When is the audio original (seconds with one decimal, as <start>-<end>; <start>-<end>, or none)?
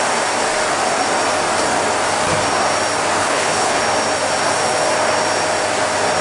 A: 0.0-3.2; 3.8-6.2